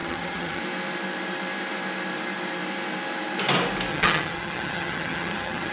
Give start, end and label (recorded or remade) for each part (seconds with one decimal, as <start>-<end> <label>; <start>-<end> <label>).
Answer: 0.0-0.6 remade; 0.6-3.9 recorded; 3.9-5.7 remade